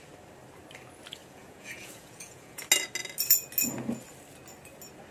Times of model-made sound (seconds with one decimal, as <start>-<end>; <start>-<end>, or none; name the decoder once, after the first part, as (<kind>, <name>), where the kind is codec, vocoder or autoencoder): 1.2-2.6 (vocoder, Vocos)